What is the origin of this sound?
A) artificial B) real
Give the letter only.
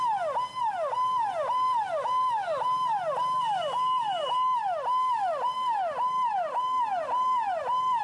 B